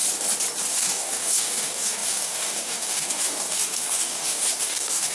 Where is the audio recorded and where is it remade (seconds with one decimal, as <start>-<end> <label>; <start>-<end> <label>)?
0.0-0.7 recorded; 0.7-5.1 remade